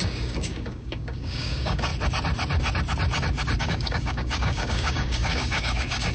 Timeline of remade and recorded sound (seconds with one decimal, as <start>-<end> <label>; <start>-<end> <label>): 0.0-1.9 remade; 1.9-3.6 recorded; 3.6-6.1 remade